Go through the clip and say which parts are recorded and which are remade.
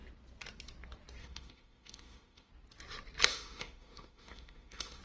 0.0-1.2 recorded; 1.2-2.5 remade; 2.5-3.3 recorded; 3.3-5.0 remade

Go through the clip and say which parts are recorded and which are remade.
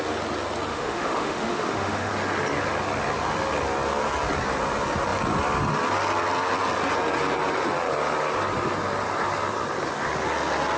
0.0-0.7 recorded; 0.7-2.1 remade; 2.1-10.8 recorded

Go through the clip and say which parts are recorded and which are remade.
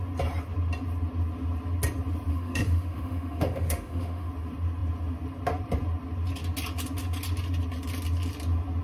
0.0-2.3 recorded; 2.3-4.3 remade; 4.3-8.8 recorded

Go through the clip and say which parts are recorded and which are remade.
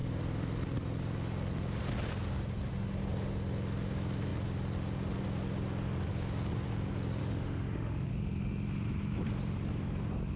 0.0-7.2 recorded; 7.2-8.1 remade; 8.1-10.4 recorded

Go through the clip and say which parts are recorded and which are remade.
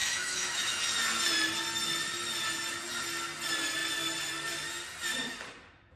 0.0-0.8 remade; 0.8-6.0 recorded